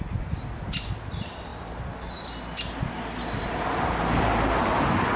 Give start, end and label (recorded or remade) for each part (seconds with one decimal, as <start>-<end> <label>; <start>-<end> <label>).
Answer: 0.0-5.2 recorded